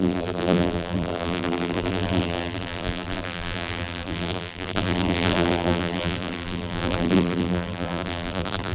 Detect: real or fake fake